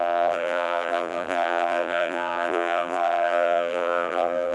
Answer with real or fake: fake